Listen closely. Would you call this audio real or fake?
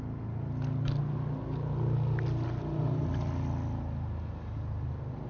real